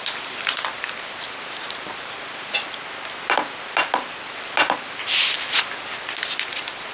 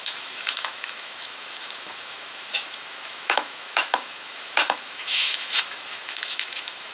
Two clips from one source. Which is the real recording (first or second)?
first